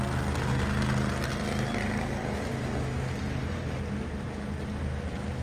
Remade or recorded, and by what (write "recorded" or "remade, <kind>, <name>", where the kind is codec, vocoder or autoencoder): recorded